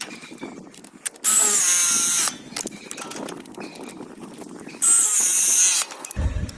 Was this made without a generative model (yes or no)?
yes